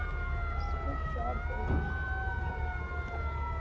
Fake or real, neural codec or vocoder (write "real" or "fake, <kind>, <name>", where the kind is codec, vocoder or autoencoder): real